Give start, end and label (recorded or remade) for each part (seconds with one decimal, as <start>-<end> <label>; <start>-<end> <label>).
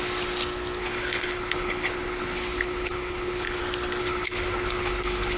0.0-0.8 recorded; 0.8-3.6 remade; 3.6-4.0 recorded; 4.0-5.4 remade